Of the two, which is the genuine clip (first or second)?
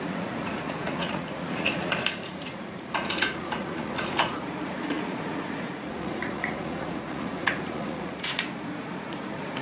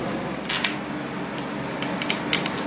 second